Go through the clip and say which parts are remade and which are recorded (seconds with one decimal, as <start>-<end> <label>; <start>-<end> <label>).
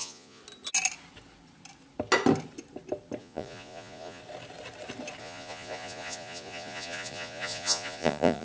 0.0-0.4 remade; 0.4-3.2 recorded; 3.2-4.2 remade; 4.2-5.2 recorded; 5.2-8.4 remade